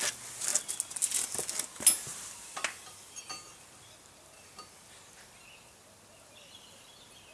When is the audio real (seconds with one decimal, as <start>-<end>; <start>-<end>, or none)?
0.0-7.3